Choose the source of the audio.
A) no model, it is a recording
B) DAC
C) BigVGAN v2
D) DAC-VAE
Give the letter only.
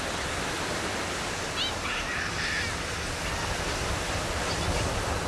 A